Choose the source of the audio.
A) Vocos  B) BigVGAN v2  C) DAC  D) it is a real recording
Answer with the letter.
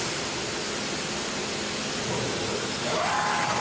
D